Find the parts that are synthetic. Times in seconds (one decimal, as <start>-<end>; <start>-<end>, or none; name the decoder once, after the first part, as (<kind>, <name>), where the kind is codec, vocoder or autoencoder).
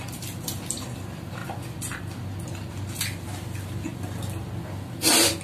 0.0-1.4 (vocoder, BigVGAN v2); 4.6-5.4